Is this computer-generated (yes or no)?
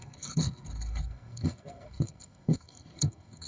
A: yes